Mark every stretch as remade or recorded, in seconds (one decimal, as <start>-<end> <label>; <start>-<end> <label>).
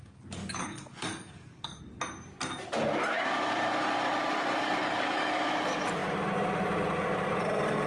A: 0.0-0.4 recorded; 0.4-1.8 remade; 1.8-4.8 recorded; 4.8-5.5 remade; 5.5-7.9 recorded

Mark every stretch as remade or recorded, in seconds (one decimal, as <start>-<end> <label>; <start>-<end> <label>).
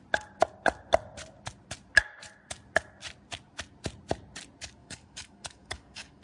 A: 0.0-4.8 recorded; 4.8-6.2 remade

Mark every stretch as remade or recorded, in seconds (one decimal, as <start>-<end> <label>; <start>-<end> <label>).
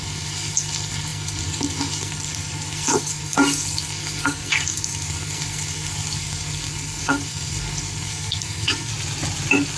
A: 0.0-8.9 remade; 8.9-9.8 recorded